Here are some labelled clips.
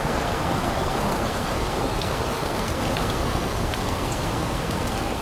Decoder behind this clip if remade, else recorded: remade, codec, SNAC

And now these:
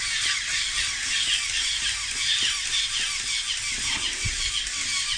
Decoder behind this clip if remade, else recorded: recorded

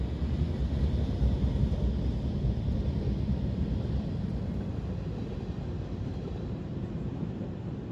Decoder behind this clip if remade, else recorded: recorded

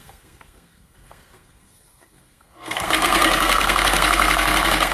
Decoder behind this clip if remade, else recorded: remade, codec, SNAC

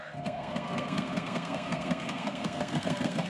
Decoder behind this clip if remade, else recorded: remade, codec, SNAC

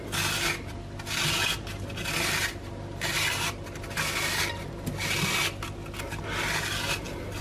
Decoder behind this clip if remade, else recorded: recorded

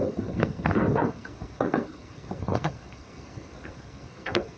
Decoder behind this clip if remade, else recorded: remade, codec, SNAC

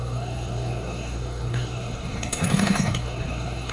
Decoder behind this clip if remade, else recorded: remade, codec, SNAC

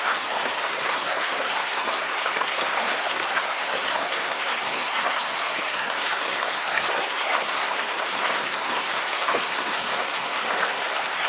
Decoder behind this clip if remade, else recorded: remade, codec, SNAC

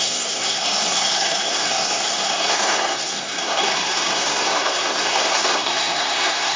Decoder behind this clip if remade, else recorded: remade, codec, SNAC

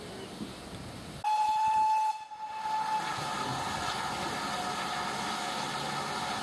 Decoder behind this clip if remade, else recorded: recorded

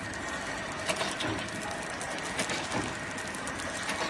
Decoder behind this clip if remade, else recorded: recorded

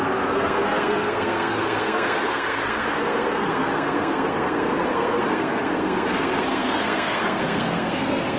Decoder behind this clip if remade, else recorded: remade, codec, SNAC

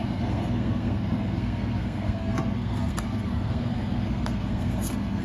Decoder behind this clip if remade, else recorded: remade, codec, SNAC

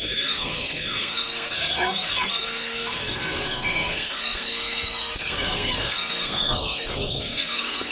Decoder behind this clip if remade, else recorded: remade, codec, SNAC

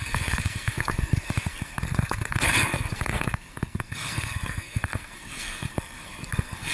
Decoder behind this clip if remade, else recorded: remade, codec, SNAC